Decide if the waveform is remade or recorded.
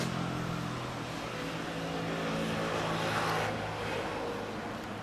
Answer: recorded